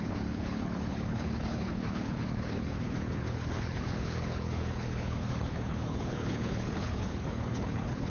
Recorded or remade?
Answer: remade